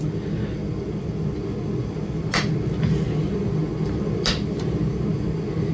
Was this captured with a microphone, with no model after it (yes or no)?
yes